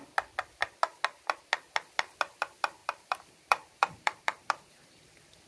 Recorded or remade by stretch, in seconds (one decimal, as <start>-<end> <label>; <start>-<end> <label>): 0.0-2.8 recorded; 2.8-4.9 remade; 4.9-5.5 recorded